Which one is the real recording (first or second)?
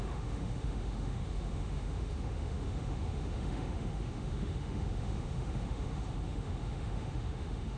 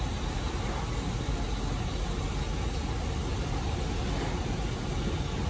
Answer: second